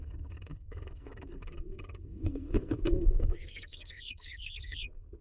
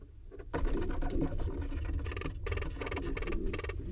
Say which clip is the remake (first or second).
first